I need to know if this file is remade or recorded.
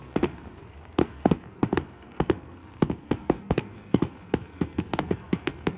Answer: remade